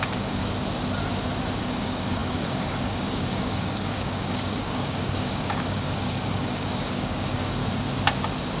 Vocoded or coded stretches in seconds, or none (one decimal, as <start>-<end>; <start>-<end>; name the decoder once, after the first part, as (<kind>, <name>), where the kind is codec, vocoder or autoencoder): 0.0-0.4 (codec, DAC); 1.6-7.6